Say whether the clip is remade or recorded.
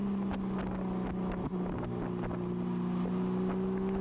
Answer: recorded